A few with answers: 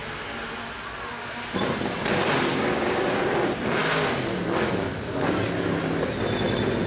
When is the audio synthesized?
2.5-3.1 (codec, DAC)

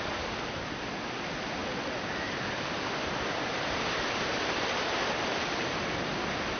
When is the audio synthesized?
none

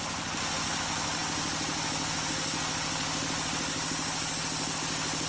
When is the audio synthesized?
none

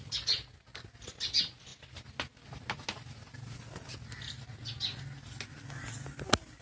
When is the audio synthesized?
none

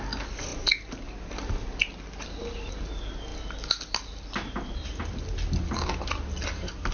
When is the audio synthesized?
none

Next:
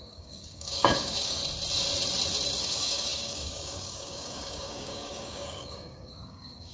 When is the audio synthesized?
0.0-1.4 (codec, DAC); 2.6-6.7

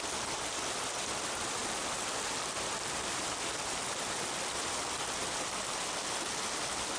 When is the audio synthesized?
none

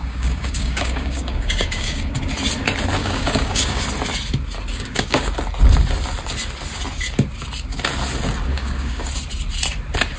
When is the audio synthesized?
0.0-2.2 (codec, DAC); 3.0-3.8; 4.7-5.3; 8.5-9.1